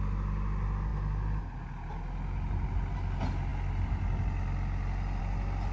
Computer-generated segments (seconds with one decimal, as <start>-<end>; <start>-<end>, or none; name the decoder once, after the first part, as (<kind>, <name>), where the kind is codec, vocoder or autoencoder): none